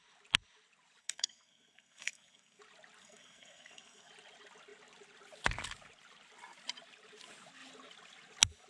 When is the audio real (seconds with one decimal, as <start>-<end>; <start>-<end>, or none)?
0.0-1.0; 2.6-3.0; 4.1-8.7